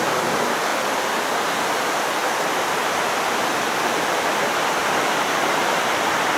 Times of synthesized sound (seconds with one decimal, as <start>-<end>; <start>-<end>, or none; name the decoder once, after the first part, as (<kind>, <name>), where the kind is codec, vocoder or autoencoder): 2.2-6.0 (vocoder, BigVGAN v2)